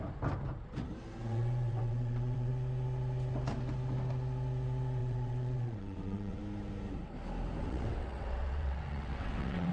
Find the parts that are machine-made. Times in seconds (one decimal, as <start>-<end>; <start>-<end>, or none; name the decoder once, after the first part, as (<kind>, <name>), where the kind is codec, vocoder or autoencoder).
1.2-2.5 (vocoder, WaveNeXt); 5.0-6.4; 7.6-9.7